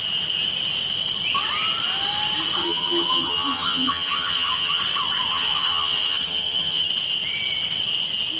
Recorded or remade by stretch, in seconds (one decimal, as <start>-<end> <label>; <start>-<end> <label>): 0.0-2.6 recorded; 2.6-4.8 remade; 4.8-5.3 recorded; 5.3-6.9 remade; 6.9-8.4 recorded